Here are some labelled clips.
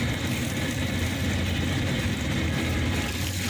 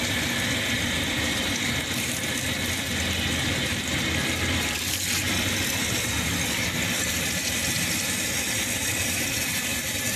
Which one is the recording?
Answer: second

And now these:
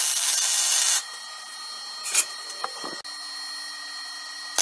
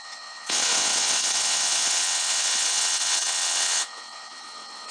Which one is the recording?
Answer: first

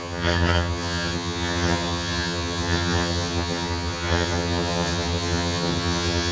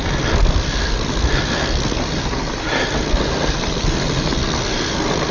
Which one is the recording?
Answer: second